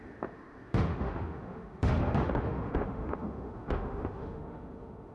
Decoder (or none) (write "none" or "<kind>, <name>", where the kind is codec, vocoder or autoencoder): autoencoder, DAC-VAE